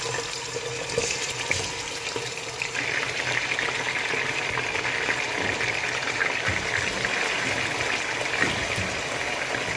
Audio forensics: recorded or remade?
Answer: recorded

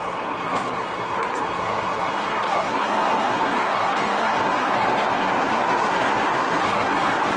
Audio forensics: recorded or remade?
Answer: remade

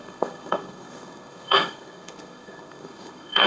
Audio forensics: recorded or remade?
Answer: remade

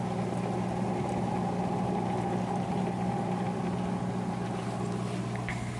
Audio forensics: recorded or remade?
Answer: recorded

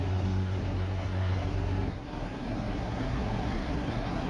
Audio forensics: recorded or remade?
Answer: remade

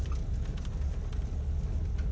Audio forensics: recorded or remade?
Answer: recorded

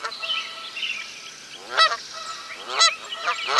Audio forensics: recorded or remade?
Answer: recorded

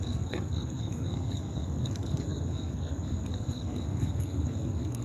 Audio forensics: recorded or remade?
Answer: remade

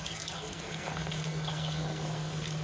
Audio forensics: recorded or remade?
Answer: remade